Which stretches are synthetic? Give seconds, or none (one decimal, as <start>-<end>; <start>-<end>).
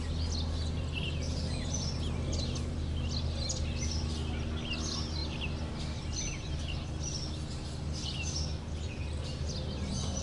none